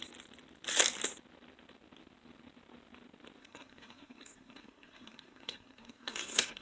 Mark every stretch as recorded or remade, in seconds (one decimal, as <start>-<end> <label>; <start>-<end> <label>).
0.0-3.4 recorded; 3.4-6.6 remade